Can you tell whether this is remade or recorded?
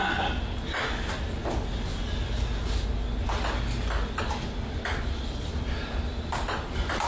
recorded